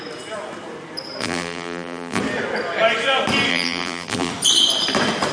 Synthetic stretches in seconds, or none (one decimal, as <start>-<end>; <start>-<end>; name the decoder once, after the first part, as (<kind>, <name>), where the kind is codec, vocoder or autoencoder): 1.2-2.2 (vocoder, BigVGAN v2); 3.5-4.3